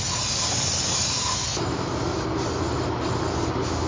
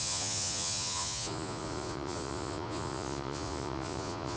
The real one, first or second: first